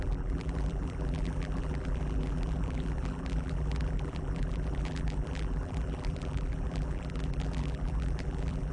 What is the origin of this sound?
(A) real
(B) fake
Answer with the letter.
B